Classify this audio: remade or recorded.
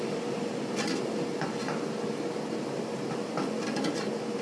recorded